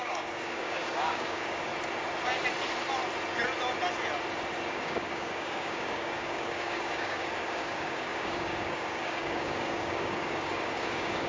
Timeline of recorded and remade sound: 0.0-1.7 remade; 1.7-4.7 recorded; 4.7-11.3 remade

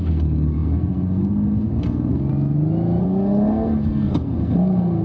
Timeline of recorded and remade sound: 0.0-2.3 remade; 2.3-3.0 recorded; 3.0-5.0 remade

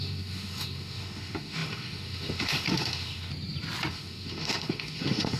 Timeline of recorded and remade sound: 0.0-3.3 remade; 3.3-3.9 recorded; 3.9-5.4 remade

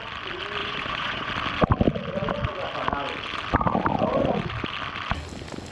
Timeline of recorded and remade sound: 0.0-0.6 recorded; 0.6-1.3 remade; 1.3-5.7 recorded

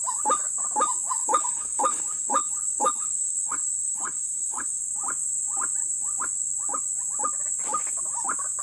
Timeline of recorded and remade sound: 0.0-1.2 recorded; 1.2-4.8 remade; 4.8-8.6 recorded

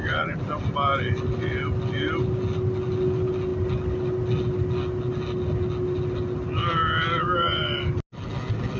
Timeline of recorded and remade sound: 0.0-8.8 recorded

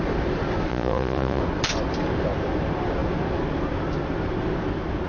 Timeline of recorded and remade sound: 0.0-0.7 recorded; 0.7-1.4 remade; 1.4-5.1 recorded